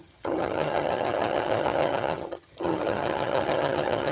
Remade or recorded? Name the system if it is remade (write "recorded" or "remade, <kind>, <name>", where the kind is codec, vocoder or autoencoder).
remade, vocoder, HiFi-GAN